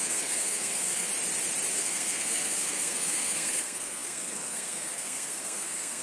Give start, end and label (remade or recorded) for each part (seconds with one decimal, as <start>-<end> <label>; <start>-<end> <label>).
0.0-1.1 remade; 1.1-1.7 recorded; 1.7-6.0 remade